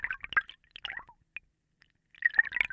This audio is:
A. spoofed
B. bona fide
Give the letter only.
B